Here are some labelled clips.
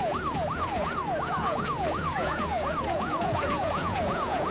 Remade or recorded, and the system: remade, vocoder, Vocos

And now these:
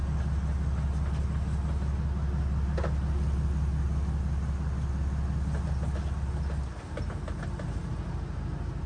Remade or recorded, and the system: recorded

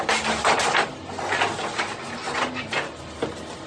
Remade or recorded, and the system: recorded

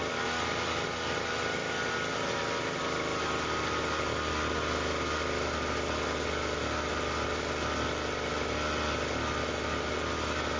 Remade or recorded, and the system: recorded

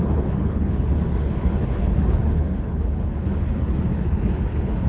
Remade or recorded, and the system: remade, codec, HILCodec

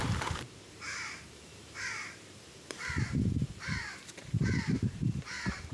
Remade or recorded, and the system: remade, vocoder, BigVGAN v2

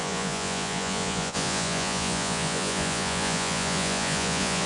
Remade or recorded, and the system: remade, vocoder, Vocos